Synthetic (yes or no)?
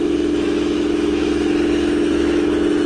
yes